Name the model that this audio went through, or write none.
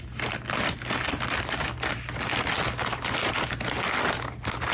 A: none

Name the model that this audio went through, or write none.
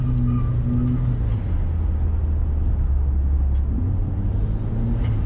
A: none